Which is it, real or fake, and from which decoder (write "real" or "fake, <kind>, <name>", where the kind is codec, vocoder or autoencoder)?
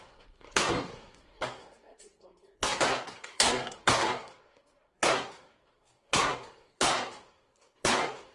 fake, codec, SNAC